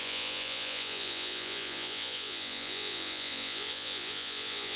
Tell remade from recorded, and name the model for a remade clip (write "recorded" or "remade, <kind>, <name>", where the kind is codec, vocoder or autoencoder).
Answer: remade, vocoder, Vocos